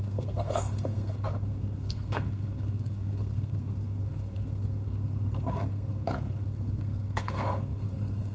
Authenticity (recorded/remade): remade